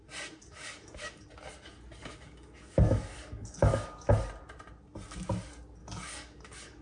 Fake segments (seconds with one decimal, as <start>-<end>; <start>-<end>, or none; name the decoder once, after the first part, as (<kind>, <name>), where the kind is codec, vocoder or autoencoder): 0.4-1.2 (codec, DAC); 2.0-4.1; 5.8-6.8